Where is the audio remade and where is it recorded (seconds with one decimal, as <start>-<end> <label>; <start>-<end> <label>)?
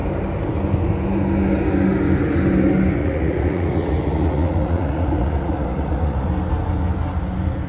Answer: 0.0-3.0 recorded; 3.0-6.3 remade; 6.3-7.7 recorded